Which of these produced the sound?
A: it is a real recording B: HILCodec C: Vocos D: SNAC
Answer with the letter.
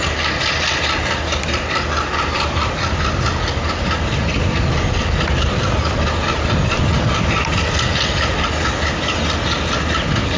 A